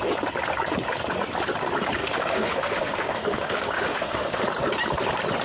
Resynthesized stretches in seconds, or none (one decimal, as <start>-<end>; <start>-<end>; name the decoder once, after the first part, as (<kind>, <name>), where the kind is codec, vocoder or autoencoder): 2.0-4.4 (autoencoder, DAC-VAE)